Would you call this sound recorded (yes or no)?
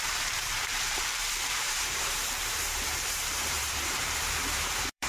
no